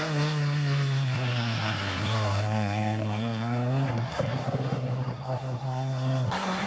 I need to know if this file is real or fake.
fake